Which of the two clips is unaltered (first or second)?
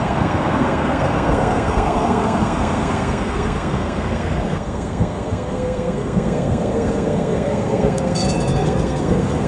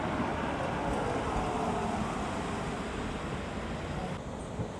second